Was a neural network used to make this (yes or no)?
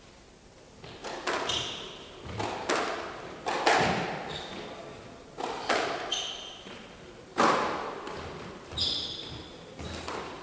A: no